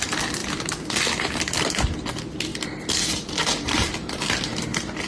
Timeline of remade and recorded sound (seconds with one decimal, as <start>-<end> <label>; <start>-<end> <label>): 0.0-2.5 recorded; 2.5-4.4 remade; 4.4-5.1 recorded